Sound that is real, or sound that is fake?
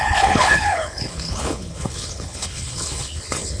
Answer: fake